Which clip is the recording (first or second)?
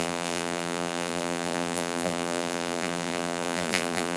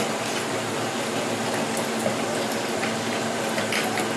second